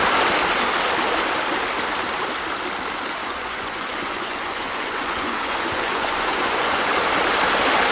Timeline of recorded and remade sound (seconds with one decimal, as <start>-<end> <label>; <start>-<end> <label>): 0.0-3.2 recorded; 3.2-6.9 remade; 6.9-7.9 recorded